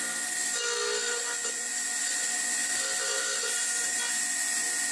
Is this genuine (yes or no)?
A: yes